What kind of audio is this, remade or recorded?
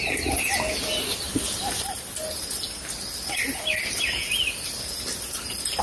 recorded